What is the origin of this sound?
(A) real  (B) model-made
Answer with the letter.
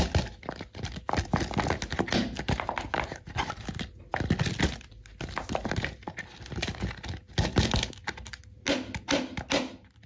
A